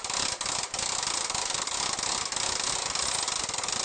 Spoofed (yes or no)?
no